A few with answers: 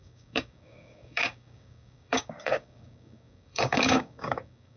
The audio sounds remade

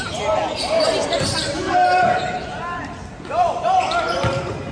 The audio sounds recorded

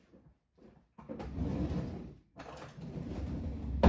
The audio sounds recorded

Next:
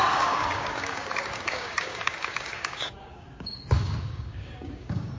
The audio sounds remade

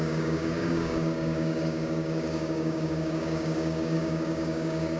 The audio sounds remade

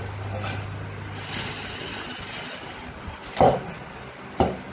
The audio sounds recorded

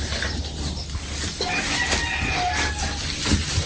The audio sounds recorded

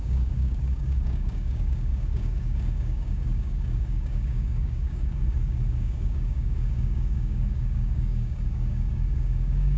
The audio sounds remade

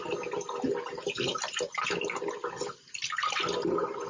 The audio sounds recorded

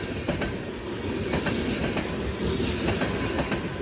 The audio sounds recorded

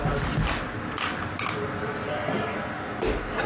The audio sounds recorded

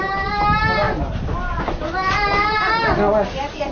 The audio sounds recorded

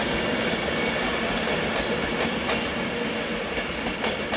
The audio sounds recorded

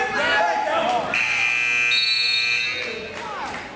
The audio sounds recorded